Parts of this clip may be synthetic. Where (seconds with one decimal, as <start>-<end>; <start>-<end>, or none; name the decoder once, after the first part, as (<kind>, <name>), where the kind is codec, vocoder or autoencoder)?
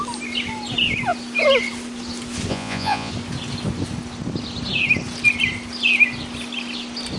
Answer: 2.5-3.1 (vocoder, Vocos)